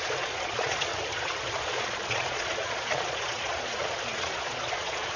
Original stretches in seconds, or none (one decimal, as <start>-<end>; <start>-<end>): 0.9-1.6